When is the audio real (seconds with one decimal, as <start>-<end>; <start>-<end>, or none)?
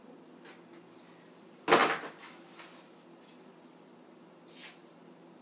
0.0-5.4